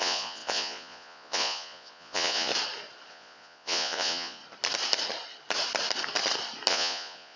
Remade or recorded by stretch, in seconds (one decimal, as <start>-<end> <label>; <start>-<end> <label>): 0.0-2.5 remade; 2.5-3.1 recorded; 3.1-4.4 remade; 4.4-6.7 recorded; 6.7-7.4 remade